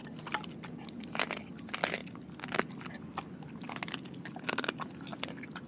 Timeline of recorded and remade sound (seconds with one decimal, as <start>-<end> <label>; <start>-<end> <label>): 0.0-5.7 recorded